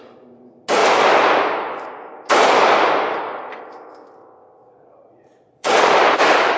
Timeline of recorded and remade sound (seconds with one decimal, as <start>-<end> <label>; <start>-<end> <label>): 0.0-4.6 recorded; 4.6-5.9 remade; 5.9-6.6 recorded